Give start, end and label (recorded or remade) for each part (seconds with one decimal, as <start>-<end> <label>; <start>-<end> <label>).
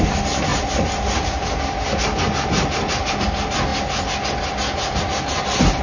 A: 0.0-5.8 recorded